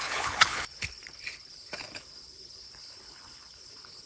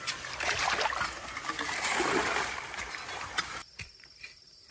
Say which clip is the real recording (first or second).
second